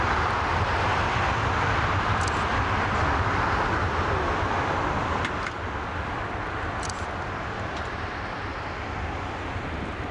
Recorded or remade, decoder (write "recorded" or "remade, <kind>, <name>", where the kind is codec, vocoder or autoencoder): recorded